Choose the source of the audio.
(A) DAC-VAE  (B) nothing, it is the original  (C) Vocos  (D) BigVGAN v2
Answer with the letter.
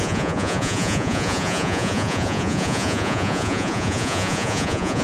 C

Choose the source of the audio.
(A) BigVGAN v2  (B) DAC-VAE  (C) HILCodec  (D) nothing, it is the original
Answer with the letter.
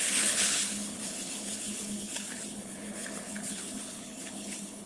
C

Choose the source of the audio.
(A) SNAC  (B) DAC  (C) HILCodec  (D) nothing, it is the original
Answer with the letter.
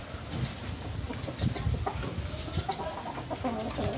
D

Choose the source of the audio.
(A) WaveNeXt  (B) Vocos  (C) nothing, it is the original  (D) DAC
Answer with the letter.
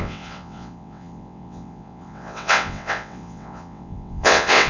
A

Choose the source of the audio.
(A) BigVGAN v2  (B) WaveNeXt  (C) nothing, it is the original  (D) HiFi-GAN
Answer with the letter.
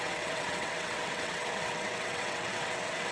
B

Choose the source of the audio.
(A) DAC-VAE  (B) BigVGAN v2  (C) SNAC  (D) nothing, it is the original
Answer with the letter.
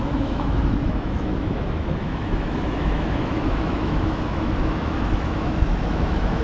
A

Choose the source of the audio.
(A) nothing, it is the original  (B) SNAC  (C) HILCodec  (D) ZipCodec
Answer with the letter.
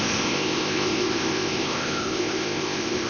D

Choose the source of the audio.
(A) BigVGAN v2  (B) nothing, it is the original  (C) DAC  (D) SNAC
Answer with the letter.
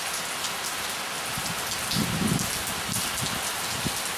B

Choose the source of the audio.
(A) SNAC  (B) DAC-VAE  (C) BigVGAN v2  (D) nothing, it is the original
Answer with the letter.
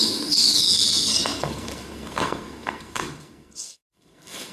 A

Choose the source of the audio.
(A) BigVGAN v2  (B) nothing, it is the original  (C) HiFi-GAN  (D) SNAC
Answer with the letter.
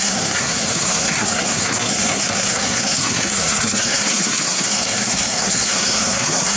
D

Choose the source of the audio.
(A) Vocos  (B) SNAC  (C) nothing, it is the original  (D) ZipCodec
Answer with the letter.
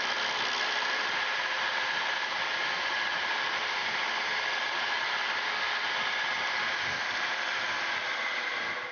C